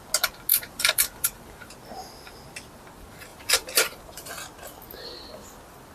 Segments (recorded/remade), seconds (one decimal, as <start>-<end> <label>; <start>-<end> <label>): 0.0-0.5 recorded; 0.5-1.7 remade; 1.7-3.3 recorded; 3.3-4.3 remade; 4.3-5.9 recorded